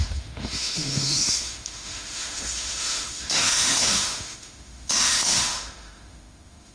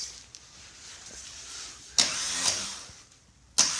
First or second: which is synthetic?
first